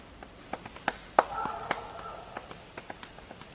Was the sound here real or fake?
real